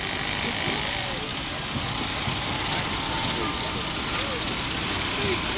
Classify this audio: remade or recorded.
recorded